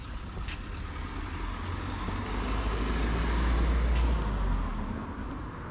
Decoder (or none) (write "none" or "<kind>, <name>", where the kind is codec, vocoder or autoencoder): none